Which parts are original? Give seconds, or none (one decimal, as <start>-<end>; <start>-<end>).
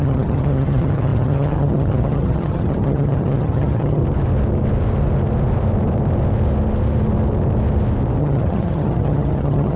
4.0-8.2